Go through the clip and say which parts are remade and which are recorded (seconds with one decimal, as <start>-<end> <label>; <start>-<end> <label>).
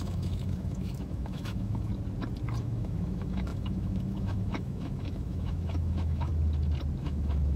0.0-1.9 remade; 1.9-2.6 recorded; 2.6-6.3 remade; 6.3-7.0 recorded; 7.0-7.6 remade